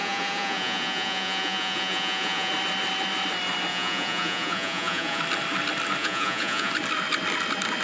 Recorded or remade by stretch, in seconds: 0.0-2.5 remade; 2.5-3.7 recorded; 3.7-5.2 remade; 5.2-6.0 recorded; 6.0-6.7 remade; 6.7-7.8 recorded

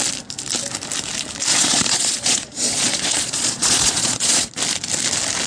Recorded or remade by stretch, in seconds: 0.0-1.5 recorded; 1.5-4.5 remade; 4.5-5.5 recorded

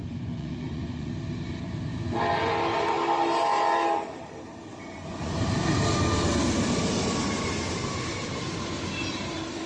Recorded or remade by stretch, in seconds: 0.0-1.1 remade; 1.1-1.9 recorded; 1.9-2.5 remade; 2.5-4.7 recorded; 4.7-5.3 remade; 5.3-9.7 recorded